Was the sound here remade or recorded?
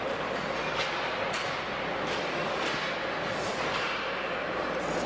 recorded